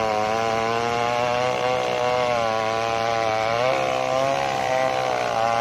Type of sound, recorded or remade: recorded